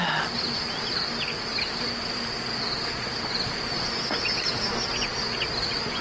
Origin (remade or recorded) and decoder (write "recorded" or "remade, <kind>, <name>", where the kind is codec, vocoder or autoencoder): recorded